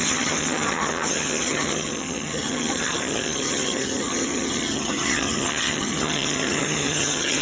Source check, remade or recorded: remade